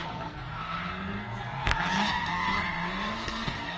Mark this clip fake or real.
fake